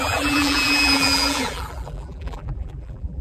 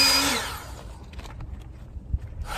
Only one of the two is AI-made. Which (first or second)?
first